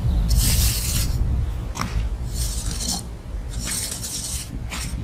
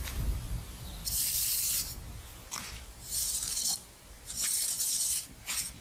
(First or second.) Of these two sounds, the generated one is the second